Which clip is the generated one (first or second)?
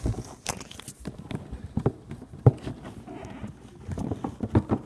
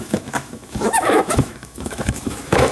second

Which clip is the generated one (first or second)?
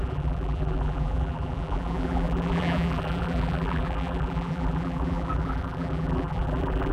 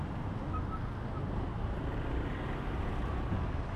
first